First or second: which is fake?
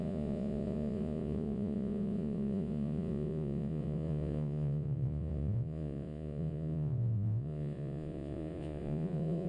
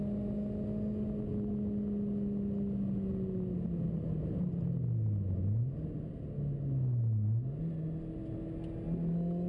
first